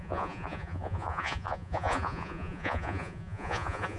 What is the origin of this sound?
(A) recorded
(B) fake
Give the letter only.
B